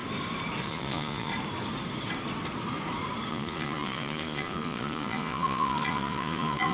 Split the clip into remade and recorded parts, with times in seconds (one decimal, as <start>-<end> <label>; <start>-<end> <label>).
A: 0.0-0.6 recorded; 0.6-1.3 remade; 1.3-3.3 recorded; 3.3-6.7 remade